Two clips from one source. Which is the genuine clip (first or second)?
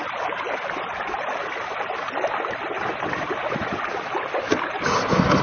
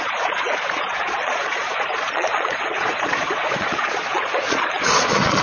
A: first